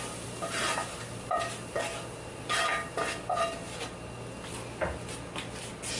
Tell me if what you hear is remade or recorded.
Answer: recorded